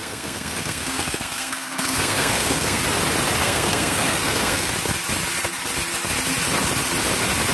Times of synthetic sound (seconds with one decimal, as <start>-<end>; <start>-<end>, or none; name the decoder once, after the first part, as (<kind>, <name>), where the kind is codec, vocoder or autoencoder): 0.0-2.8 (codec, SNAC); 3.4-4.7